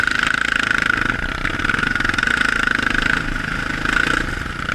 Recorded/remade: recorded